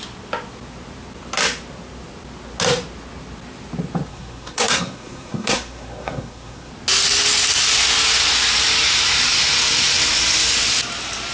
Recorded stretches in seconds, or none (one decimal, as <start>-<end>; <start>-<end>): 0.0-4.1; 6.7-11.3